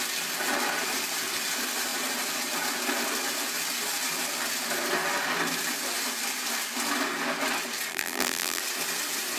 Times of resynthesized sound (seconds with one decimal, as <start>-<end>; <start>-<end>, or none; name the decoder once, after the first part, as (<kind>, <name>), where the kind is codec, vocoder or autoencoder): 7.9-8.6 (vocoder, BigVGAN v2)